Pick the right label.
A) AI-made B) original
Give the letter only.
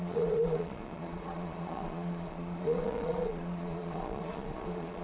A